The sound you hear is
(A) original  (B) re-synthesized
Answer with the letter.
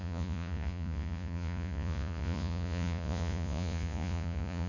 B